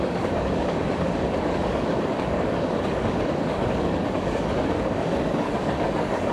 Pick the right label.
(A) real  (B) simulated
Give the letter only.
B